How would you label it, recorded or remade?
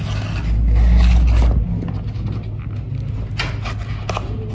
recorded